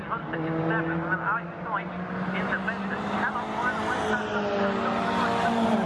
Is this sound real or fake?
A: real